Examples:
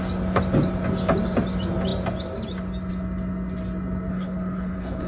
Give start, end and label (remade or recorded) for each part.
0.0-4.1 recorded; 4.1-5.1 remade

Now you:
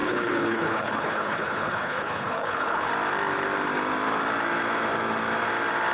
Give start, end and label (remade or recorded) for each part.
0.0-2.9 remade; 2.9-5.9 recorded